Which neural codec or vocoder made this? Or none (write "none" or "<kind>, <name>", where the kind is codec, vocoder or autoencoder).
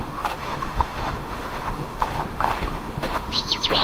autoencoder, DAC-VAE